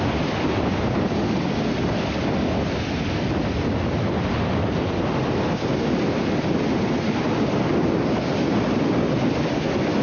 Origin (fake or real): real